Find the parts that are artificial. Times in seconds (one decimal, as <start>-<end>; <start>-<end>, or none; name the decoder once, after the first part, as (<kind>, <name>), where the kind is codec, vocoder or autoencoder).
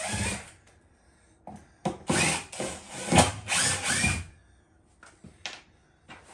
none